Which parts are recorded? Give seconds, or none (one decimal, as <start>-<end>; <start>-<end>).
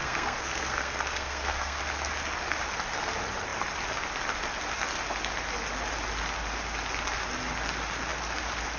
1.8-8.8